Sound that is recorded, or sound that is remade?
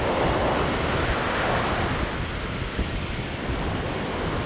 recorded